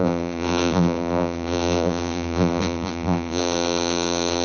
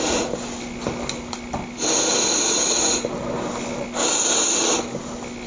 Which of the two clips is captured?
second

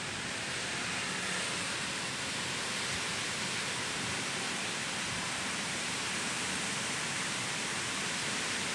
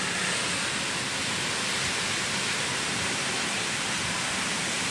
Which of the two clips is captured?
second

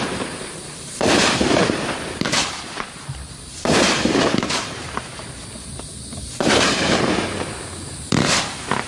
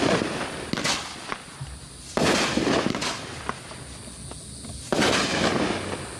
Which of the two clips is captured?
second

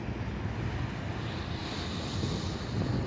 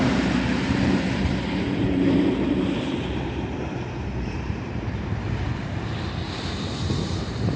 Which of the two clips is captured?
first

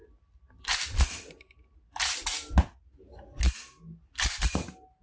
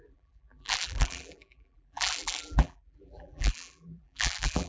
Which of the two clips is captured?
first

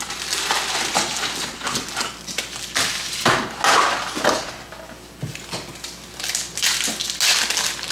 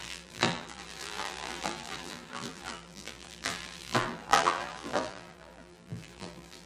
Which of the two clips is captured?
first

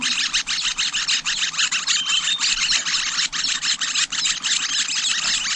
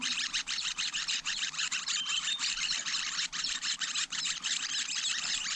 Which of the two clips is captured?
first